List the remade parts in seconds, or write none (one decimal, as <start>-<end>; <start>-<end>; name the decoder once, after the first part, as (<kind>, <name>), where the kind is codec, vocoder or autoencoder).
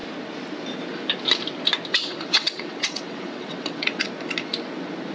1.9-4.1 (vocoder, WaveNeXt)